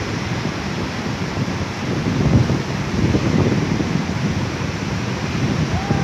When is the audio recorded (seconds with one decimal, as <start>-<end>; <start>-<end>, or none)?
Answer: 0.0-2.4; 5.1-6.0